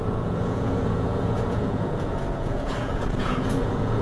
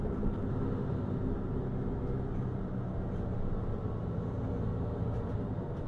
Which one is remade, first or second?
first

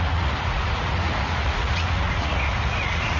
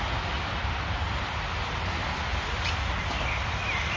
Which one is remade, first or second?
first